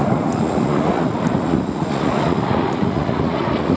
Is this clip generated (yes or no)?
yes